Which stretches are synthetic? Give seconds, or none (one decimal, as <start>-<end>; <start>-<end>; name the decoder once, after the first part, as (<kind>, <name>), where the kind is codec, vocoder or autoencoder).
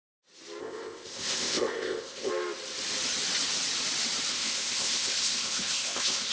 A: 0.6-2.3 (codec, ZipCodec); 4.3-6.3